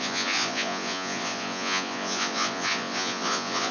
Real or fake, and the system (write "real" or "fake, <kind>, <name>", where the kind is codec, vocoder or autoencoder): fake, vocoder, Vocos